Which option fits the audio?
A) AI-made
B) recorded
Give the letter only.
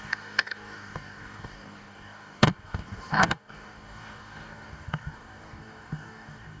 A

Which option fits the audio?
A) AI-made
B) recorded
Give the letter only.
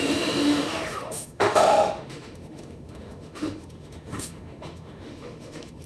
A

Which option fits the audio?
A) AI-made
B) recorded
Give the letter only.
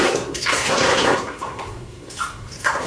A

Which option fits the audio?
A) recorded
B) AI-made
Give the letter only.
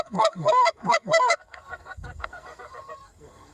B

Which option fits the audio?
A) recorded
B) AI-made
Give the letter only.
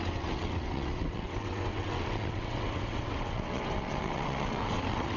B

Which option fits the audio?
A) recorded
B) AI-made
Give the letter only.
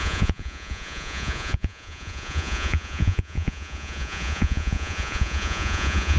B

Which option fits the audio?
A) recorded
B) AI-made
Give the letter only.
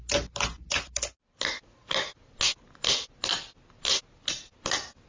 A